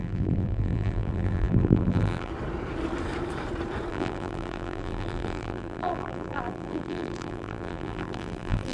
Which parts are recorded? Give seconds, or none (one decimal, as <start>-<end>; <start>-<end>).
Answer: 2.3-3.9